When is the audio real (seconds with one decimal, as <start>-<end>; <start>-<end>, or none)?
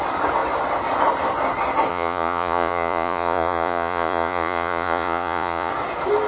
0.0-1.9; 5.7-6.3